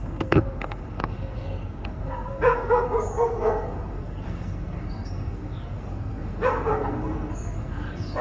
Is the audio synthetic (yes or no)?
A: yes